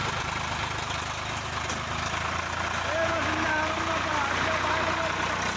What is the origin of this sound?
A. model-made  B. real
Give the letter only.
B